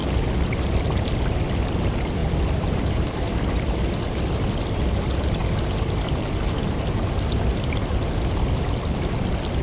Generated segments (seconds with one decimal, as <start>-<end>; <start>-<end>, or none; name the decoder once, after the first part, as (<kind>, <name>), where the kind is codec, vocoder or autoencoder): 2.2-3.8 (vocoder, BigVGAN v2)